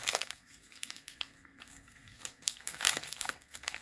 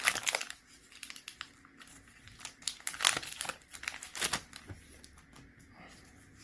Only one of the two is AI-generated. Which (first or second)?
first